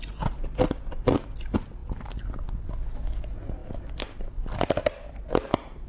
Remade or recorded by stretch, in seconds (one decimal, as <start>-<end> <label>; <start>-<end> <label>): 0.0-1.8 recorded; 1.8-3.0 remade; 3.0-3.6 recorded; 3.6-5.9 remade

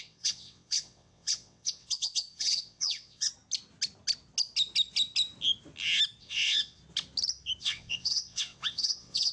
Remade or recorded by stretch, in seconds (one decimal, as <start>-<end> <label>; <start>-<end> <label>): 0.0-3.3 remade; 3.3-6.2 recorded; 6.2-6.8 remade; 6.8-7.6 recorded; 7.6-9.3 remade

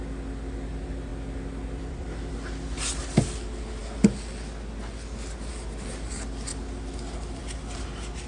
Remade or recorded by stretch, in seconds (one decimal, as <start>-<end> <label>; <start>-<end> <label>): 0.0-1.1 recorded; 1.1-2.3 remade; 2.3-8.3 recorded

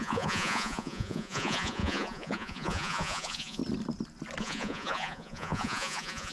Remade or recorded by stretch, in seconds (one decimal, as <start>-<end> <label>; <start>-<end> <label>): 0.0-3.6 remade; 3.6-4.4 recorded; 4.4-6.3 remade